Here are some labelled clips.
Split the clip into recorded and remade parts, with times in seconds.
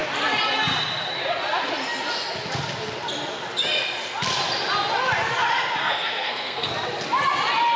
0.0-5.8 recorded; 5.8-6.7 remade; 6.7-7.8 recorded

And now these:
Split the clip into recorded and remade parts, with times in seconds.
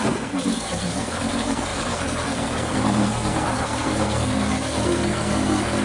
0.0-5.8 remade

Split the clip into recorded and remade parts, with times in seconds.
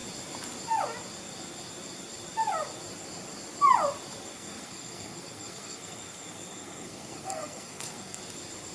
0.0-4.3 recorded; 4.3-8.2 remade; 8.2-8.7 recorded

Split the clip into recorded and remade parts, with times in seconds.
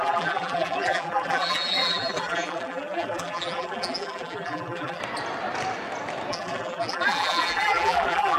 0.0-5.0 remade; 5.0-6.3 recorded; 6.3-8.4 remade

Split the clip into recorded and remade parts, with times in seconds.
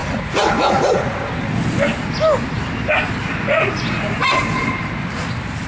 0.0-1.3 remade; 1.3-3.3 recorded; 3.3-4.7 remade; 4.7-5.7 recorded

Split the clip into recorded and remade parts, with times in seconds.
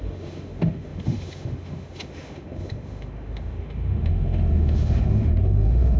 0.0-6.0 remade